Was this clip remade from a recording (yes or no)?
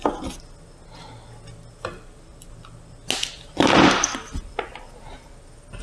no